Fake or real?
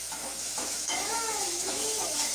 fake